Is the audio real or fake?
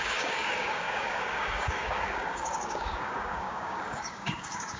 fake